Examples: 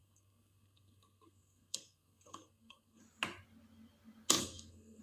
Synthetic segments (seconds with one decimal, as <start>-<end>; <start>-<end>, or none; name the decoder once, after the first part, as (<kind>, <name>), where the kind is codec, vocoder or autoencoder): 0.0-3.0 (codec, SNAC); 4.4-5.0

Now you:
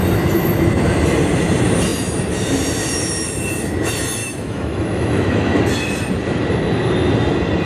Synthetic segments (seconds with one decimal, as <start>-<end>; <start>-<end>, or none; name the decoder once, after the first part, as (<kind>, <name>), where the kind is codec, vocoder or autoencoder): 4.2-5.6 (autoencoder, DAC-VAE)

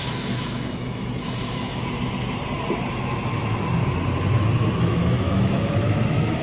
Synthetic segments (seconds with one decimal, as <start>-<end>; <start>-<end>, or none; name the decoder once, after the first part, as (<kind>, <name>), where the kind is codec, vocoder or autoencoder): 0.0-1.8 (autoencoder, DAC-VAE); 2.9-3.8; 4.8-6.4